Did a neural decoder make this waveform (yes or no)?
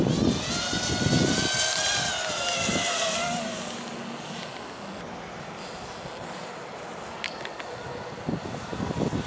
no